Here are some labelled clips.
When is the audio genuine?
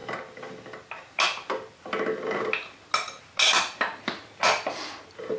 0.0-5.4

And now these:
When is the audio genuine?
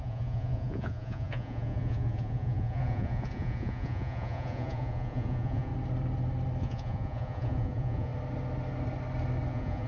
5.7-6.6; 8.1-9.5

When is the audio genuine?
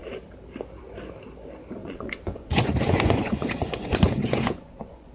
0.0-1.8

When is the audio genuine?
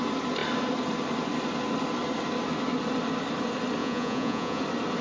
0.0-3.8; 4.6-5.0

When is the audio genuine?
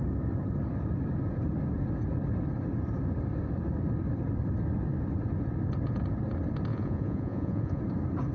0.0-6.7; 7.8-8.3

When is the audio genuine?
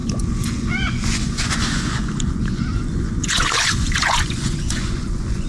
none